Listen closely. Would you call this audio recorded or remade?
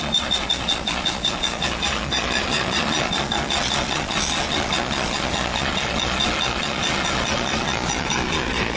remade